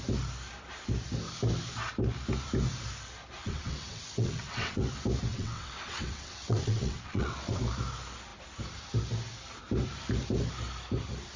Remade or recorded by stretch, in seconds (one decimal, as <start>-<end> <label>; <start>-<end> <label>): 0.0-3.4 recorded; 3.4-4.8 remade; 4.8-5.3 recorded; 5.3-7.6 remade; 7.6-11.4 recorded